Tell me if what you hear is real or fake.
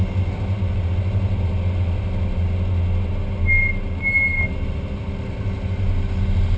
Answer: real